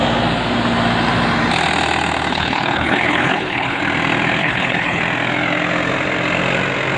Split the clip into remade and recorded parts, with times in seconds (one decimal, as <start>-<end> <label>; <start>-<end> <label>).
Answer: 0.0-2.3 recorded; 2.3-3.8 remade; 3.8-4.4 recorded; 4.4-5.0 remade; 5.0-7.0 recorded